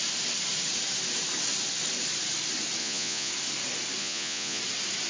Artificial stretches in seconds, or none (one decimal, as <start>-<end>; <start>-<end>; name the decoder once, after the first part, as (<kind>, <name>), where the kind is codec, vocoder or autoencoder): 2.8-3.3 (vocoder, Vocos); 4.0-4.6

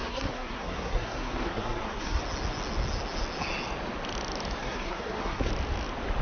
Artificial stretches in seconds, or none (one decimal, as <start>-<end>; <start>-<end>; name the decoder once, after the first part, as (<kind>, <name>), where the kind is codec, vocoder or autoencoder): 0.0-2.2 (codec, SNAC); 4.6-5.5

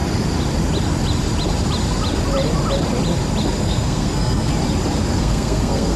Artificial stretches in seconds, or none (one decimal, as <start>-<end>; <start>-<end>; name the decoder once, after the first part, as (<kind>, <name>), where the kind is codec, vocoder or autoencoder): 3.6-4.5 (codec, SNAC); 5.2-6.0

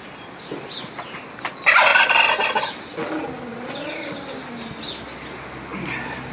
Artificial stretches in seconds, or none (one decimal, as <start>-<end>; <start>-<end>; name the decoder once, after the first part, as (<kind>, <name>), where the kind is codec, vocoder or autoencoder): none

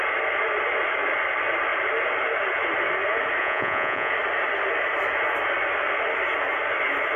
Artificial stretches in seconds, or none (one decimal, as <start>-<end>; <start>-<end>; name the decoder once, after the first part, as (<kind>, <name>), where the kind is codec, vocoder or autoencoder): 3.4-4.1 (vocoder, Vocos)